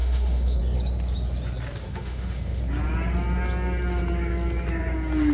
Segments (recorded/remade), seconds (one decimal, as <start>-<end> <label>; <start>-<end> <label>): 0.0-0.6 remade; 0.6-1.8 recorded; 1.8-2.6 remade; 2.6-5.3 recorded